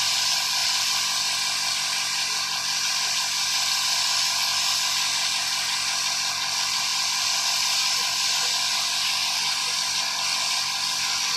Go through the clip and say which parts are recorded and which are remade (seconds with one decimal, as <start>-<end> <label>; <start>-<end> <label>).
0.0-6.9 recorded; 6.9-7.4 remade; 7.4-11.4 recorded